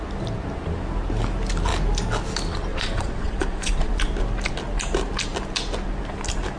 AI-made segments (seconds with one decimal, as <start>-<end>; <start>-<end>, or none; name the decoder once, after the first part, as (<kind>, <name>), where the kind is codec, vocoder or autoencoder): 2.7-3.9 (vocoder, Vocos)